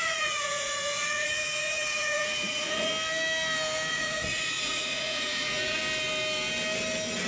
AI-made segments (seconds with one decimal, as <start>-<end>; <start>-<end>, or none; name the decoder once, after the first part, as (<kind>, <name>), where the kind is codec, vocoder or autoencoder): 0.0-2.9 (vocoder, Vocos); 3.9-5.8